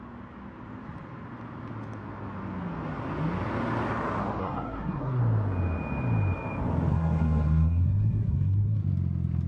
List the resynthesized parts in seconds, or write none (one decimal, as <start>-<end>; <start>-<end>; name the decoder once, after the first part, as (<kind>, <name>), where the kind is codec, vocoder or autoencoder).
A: 4.4-5.2 (codec, SNAC); 6.9-8.8